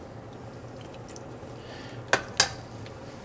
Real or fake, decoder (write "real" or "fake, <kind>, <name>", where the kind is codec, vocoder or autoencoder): real